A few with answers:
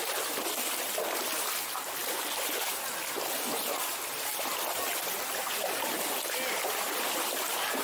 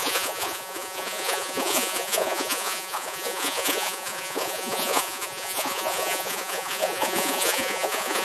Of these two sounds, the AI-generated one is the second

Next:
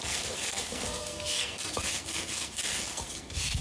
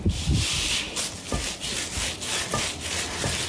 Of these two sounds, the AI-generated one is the first